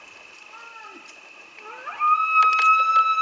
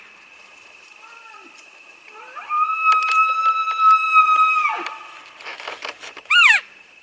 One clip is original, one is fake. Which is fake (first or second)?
second